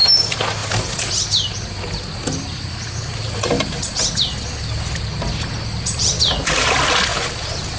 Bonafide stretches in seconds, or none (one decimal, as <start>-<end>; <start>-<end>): 0.0-7.8

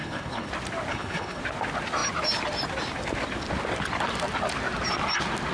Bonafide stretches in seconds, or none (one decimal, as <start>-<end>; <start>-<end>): 0.5-0.9; 1.4-5.5

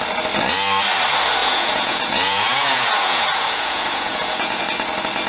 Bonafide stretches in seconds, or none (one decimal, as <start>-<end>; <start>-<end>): 0.0-1.4; 4.6-5.3

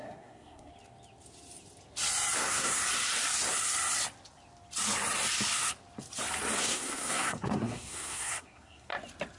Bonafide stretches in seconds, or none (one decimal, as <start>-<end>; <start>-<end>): 0.7-2.4; 2.8-6.6; 8.9-9.4

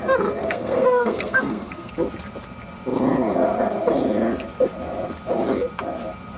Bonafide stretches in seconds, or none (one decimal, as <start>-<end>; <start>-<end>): 0.0-0.4; 1.9-6.4

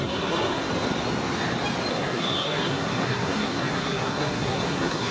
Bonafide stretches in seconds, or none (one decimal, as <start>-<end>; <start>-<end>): 0.7-1.9

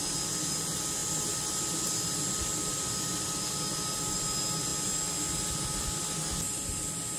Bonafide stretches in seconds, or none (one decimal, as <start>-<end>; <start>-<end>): 0.0-7.2

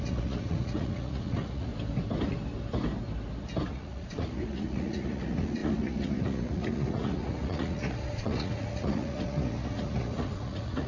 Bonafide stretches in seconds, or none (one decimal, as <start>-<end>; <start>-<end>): 1.7-3.7